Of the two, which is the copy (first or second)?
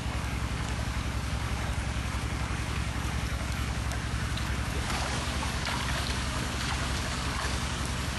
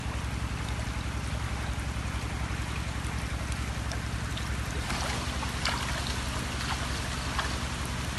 first